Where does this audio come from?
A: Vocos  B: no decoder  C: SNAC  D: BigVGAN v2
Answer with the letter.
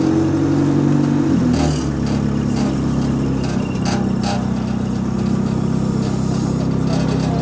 B